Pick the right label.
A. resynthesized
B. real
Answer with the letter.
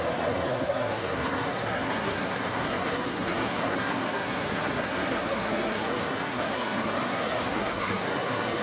A